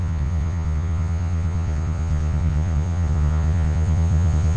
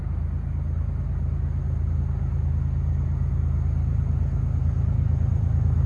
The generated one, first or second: first